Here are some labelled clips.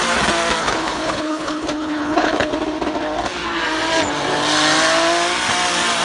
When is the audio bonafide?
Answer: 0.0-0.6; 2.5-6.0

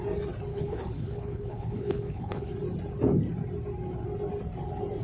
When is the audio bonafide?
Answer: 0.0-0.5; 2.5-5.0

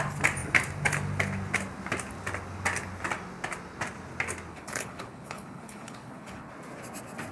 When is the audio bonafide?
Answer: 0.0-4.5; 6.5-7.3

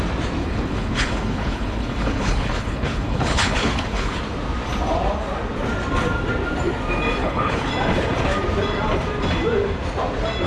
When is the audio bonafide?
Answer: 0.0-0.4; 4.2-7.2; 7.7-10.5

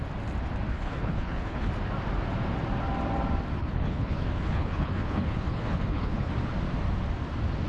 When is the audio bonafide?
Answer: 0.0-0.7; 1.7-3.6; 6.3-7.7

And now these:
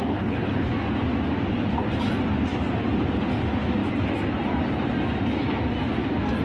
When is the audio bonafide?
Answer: 0.7-6.4